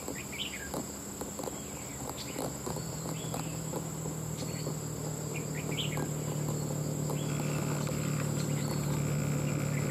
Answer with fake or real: real